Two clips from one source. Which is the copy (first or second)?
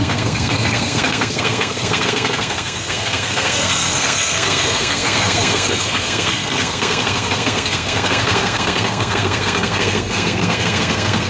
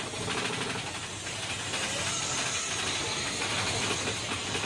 first